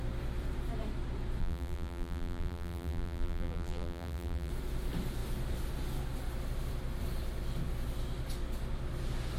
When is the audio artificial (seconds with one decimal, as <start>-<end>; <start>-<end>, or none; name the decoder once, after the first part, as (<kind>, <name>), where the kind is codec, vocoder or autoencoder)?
1.4-4.5 (vocoder, BigVGAN v2)